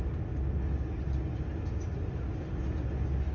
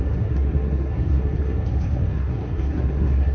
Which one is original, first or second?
first